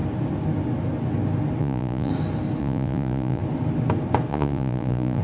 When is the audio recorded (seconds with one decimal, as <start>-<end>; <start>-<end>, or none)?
0.0-1.6; 2.1-2.6; 3.4-4.3